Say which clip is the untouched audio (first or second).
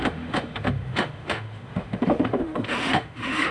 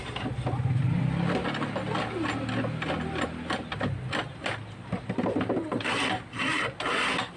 second